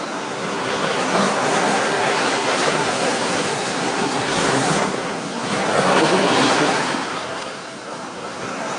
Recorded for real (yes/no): no